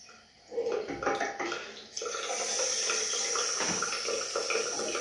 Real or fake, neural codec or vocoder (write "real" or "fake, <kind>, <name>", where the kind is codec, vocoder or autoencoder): real